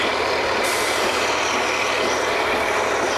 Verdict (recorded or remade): recorded